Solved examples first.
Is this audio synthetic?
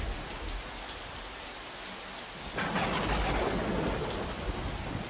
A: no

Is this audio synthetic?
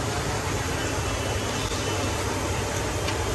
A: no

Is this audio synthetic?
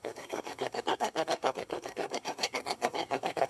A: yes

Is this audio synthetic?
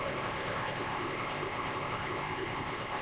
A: yes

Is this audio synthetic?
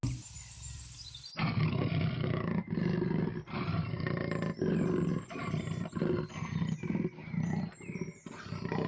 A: no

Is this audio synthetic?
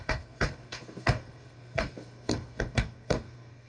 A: yes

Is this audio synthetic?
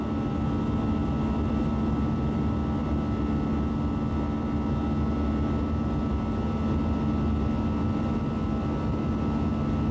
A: no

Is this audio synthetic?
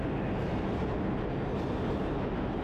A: no